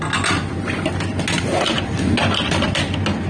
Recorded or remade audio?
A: recorded